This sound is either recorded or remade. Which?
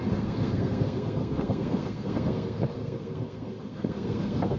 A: remade